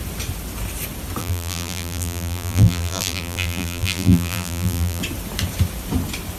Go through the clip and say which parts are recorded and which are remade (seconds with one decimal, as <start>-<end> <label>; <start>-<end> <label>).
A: 0.0-1.2 recorded; 1.2-5.0 remade; 5.0-6.4 recorded